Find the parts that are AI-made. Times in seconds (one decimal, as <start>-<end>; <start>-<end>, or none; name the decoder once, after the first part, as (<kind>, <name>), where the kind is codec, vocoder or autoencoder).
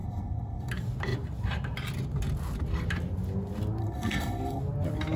0.0-0.7 (codec, SNAC); 3.8-4.6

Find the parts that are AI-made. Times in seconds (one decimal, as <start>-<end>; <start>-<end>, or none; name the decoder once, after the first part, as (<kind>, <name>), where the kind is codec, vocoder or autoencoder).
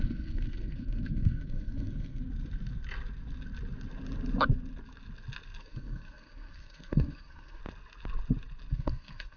0.0-2.2 (codec, SNAC); 5.6-7.6; 8.7-9.4